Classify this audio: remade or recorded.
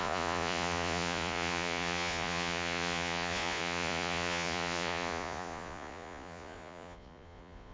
remade